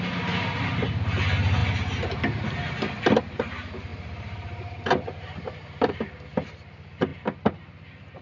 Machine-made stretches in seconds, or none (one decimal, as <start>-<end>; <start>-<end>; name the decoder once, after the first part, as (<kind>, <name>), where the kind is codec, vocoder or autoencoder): 3.9-6.0 (vocoder, BigVGAN v2)